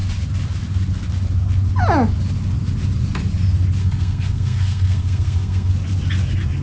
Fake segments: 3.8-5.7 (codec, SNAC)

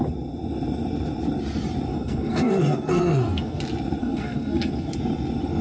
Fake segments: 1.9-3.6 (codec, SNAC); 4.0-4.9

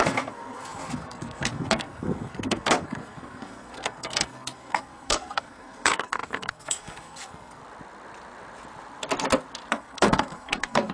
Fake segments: 0.0-7.6 (codec, SNAC); 9.7-10.9

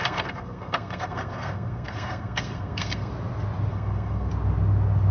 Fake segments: 0.0-3.1 (codec, SNAC); 3.7-4.3

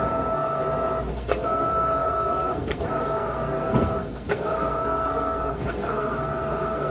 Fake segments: 0.0-0.6 (codec, SNAC); 1.1-6.9

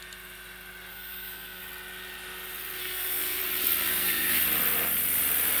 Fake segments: 0.9-1.6 (codec, SNAC); 2.8-3.4; 3.9-4.4

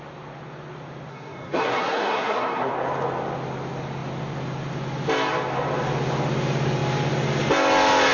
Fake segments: 1.1-2.7 (codec, SNAC)

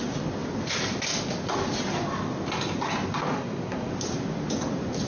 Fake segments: 3.3-3.9 (codec, SNAC)